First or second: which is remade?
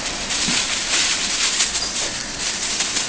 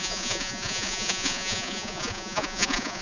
second